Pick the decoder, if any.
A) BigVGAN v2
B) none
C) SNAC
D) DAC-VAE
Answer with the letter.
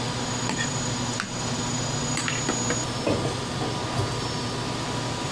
B